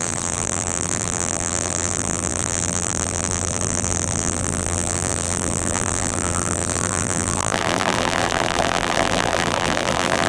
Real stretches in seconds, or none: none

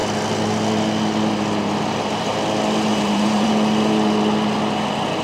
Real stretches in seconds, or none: 0.0-2.9; 3.5-5.2

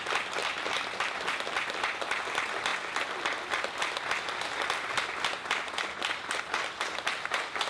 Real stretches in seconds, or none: 0.0-0.4; 2.2-7.7

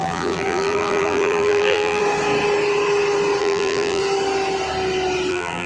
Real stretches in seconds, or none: 2.0-3.4; 4.0-5.3